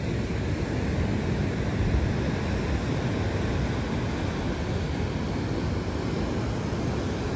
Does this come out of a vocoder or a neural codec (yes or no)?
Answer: no